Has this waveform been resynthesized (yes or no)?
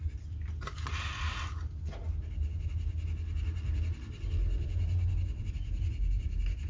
no